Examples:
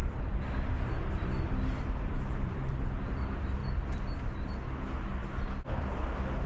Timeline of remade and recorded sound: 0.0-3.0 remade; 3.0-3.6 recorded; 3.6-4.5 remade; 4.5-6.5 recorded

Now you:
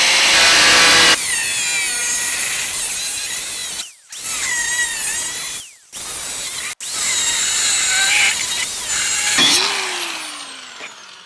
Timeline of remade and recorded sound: 0.0-11.3 recorded

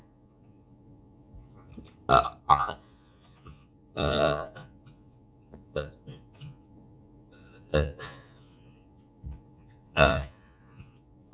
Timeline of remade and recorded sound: 0.0-1.7 remade; 1.7-2.4 recorded; 2.4-11.3 remade

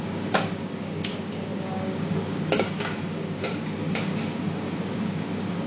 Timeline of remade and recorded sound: 0.0-5.7 remade